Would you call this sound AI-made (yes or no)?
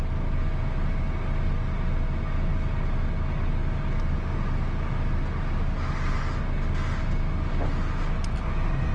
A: no